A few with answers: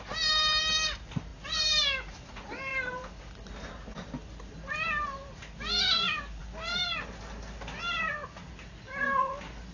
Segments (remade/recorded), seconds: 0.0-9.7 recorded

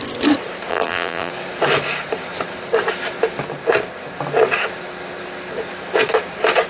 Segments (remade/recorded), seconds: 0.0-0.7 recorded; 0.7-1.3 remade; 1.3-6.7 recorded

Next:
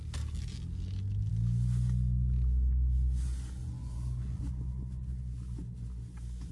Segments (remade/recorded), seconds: 0.0-3.6 recorded; 3.6-4.4 remade; 4.4-6.5 recorded

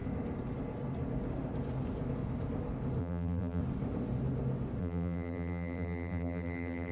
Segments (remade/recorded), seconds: 0.0-3.0 recorded; 3.0-3.6 remade; 3.6-4.8 recorded; 4.8-6.9 remade

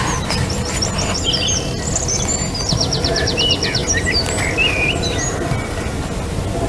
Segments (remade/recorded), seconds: 0.0-6.7 recorded

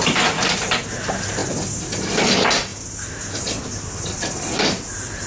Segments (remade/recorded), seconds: 0.0-5.3 recorded